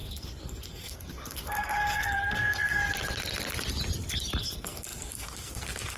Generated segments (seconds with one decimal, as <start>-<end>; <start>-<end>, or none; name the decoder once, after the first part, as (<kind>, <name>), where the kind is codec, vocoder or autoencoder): 0.0-2.8 (codec, SNAC); 4.4-6.0